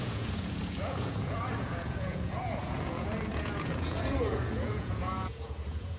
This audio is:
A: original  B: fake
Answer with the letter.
B